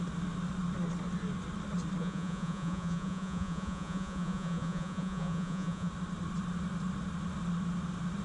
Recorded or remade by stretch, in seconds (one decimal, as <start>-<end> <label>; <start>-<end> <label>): 0.0-2.0 recorded; 2.0-5.9 remade; 5.9-8.2 recorded